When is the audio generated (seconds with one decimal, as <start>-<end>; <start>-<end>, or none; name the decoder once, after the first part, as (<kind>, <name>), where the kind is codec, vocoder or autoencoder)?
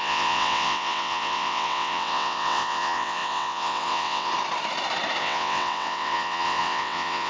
0.0-4.3 (vocoder, WaveNeXt); 5.2-7.3